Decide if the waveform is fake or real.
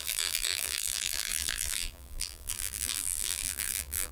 fake